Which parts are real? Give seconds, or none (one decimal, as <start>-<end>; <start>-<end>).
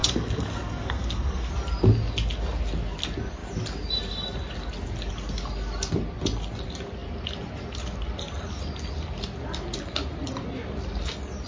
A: 1.5-11.5